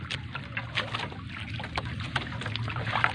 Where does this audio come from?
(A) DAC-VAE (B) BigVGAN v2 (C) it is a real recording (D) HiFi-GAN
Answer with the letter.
C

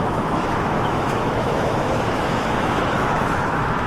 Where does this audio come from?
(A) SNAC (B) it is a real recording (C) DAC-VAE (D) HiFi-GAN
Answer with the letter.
C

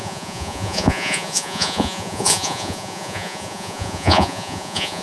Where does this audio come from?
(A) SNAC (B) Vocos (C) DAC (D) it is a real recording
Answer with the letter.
B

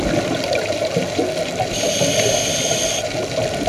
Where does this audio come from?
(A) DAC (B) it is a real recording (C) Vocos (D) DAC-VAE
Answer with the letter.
B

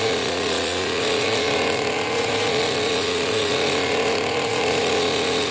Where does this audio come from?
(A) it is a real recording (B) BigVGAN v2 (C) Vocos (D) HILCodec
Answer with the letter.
C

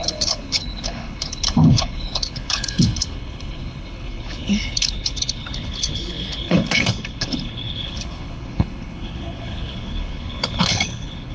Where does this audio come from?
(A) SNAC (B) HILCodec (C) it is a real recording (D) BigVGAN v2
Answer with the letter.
B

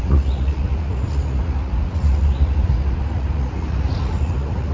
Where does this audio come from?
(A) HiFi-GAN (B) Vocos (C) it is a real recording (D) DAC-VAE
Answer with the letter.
B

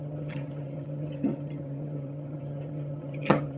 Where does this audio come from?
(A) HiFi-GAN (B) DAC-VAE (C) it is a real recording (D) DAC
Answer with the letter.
A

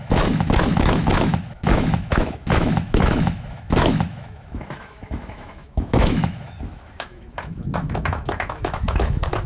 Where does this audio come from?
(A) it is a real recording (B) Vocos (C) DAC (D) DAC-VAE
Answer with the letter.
D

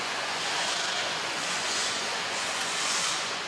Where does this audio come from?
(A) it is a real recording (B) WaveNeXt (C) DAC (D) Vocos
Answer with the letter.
D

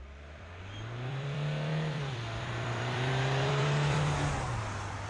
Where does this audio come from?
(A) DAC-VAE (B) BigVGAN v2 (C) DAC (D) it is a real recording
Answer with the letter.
B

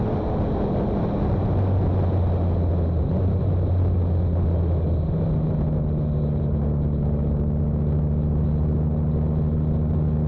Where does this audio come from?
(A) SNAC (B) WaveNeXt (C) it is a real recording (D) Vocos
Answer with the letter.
C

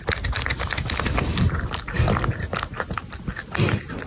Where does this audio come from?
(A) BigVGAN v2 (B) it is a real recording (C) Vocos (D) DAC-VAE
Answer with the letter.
B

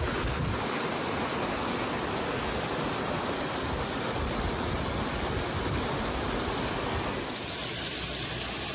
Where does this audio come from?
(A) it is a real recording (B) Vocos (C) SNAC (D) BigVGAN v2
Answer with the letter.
A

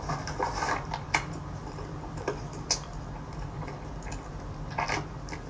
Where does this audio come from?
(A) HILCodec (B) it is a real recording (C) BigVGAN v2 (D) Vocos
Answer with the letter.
B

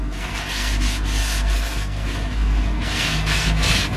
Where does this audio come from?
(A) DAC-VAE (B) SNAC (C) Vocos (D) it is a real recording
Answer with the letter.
B